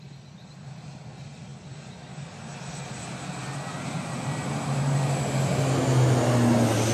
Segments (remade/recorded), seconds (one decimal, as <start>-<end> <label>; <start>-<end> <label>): 0.0-6.9 recorded